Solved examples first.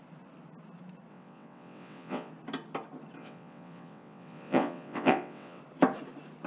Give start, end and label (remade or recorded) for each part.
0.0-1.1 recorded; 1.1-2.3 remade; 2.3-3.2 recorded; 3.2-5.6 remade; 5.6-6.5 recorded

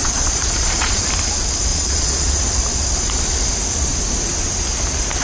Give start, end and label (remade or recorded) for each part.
0.0-1.1 remade; 1.1-1.7 recorded; 1.7-2.4 remade; 2.4-5.2 recorded

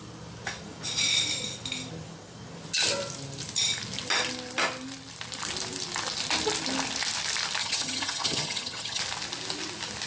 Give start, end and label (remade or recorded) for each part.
0.0-7.6 recorded; 7.6-9.0 remade; 9.0-10.1 recorded

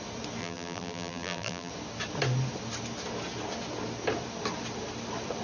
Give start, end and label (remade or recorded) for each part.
0.0-0.4 recorded; 0.4-1.7 remade; 1.7-5.4 recorded

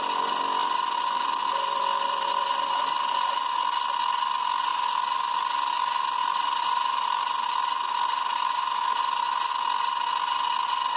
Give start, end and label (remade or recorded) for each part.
0.0-0.6 recorded; 0.6-3.5 remade; 3.5-4.7 recorded; 4.7-5.4 remade; 5.4-6.2 recorded; 6.2-9.5 remade; 9.5-11.0 recorded

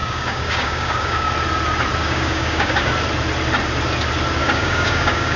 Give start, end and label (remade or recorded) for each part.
0.0-1.3 remade; 1.3-2.0 recorded; 2.0-2.9 remade; 2.9-4.4 recorded; 4.4-5.4 remade

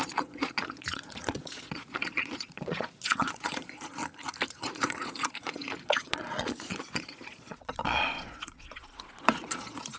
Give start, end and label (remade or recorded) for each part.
0.0-4.0 remade; 4.0-4.5 recorded; 4.5-10.0 remade

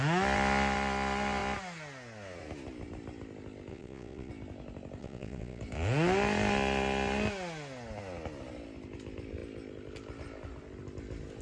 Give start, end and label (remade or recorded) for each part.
0.0-3.7 recorded; 3.7-4.3 remade; 4.3-5.0 recorded; 5.0-5.6 remade; 5.6-11.4 recorded